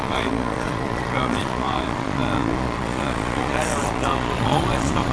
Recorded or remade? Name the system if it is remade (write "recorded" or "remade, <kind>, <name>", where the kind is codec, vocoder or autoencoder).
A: remade, vocoder, Vocos